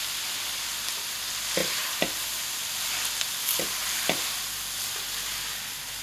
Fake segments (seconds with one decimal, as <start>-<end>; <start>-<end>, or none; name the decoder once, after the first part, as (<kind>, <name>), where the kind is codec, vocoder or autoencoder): 1.6-2.7 (vocoder, BigVGAN v2); 3.8-4.4